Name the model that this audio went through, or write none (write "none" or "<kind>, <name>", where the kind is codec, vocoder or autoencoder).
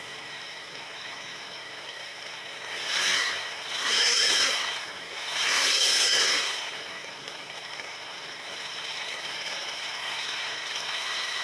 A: codec, SNAC